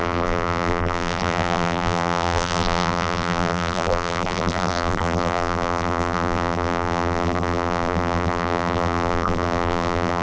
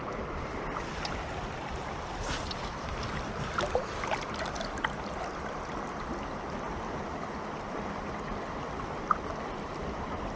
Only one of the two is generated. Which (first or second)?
first